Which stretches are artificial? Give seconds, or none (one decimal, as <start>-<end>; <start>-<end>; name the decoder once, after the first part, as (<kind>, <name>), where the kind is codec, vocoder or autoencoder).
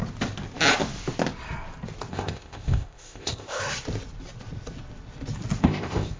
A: 2.1-3.6 (codec, ZipCodec); 5.6-6.2